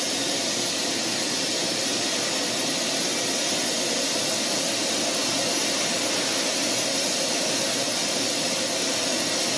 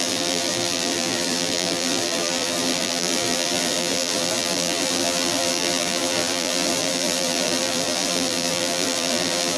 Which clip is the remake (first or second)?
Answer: second